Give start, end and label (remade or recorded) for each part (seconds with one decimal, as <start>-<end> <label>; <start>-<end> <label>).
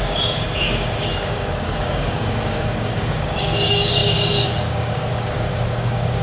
0.0-6.2 remade